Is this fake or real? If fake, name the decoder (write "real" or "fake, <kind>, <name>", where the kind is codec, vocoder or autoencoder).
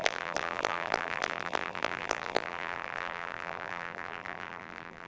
fake, vocoder, BigVGAN v2